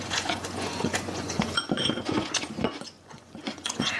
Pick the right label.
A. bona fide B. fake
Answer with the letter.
B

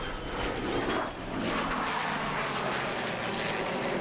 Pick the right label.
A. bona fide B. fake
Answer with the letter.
A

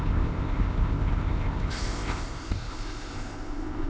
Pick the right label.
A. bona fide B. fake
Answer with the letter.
B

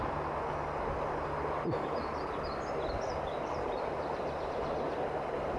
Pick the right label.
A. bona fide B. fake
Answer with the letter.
A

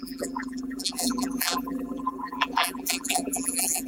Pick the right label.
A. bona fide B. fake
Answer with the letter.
B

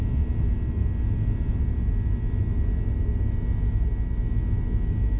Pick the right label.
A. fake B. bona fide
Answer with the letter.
B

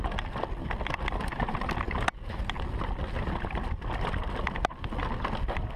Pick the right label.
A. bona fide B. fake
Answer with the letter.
A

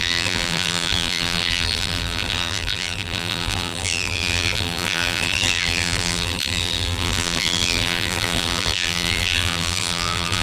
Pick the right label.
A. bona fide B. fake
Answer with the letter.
B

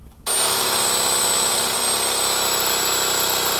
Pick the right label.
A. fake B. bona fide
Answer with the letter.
B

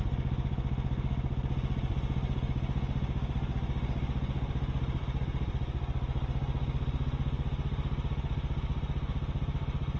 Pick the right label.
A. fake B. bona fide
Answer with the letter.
B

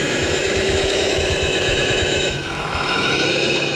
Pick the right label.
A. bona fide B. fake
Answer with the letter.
B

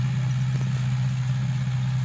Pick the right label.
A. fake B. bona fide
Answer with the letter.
B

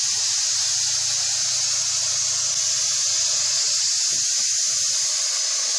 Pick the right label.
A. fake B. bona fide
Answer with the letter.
B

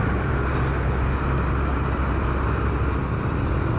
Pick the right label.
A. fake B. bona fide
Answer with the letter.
B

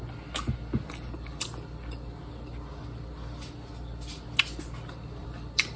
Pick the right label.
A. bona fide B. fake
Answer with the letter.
A